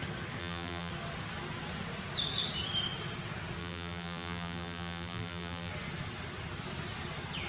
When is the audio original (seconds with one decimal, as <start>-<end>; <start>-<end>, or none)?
0.0-0.4; 0.9-3.6; 5.7-7.5